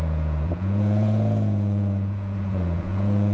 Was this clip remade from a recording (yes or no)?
yes